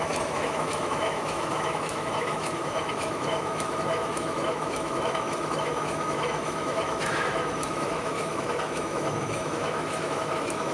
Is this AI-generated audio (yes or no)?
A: yes